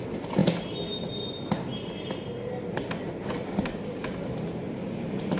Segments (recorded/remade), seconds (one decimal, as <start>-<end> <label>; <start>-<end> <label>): 0.0-5.4 recorded